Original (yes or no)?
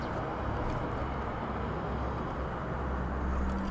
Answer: yes